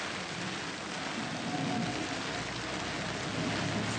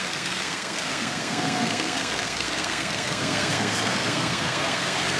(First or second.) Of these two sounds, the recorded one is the first